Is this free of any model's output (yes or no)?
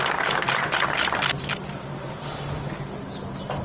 yes